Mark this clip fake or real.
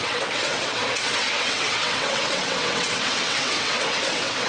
fake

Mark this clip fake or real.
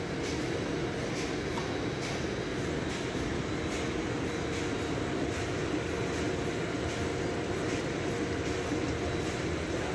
real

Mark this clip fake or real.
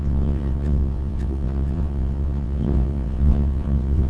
fake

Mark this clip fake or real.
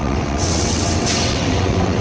fake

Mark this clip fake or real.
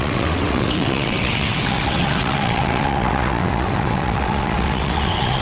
fake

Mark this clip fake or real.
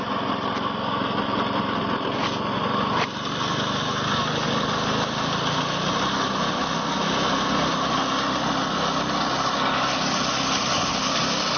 real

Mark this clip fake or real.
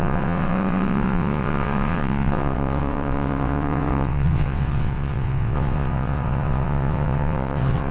fake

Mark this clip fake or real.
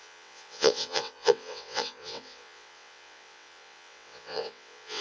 fake